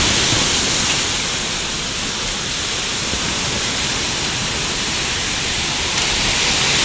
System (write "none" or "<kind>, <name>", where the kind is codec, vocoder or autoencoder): none